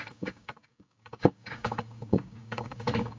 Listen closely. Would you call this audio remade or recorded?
remade